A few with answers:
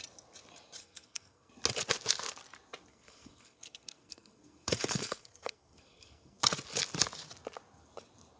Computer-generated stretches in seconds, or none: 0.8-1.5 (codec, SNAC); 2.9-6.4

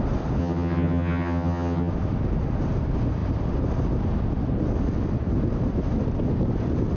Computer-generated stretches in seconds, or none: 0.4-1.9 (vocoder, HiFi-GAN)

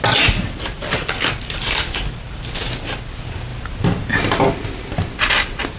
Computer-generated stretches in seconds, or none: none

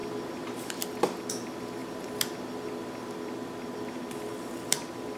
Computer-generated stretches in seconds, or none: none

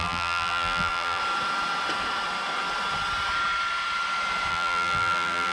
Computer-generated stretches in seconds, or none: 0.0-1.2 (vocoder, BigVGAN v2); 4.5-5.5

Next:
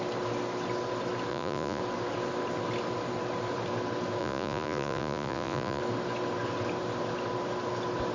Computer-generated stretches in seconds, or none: 1.3-1.8 (vocoder, Vocos); 4.2-5.8

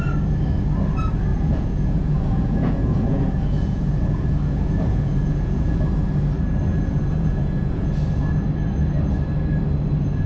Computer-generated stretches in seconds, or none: 1.3-5.8 (vocoder, Vocos); 6.7-7.9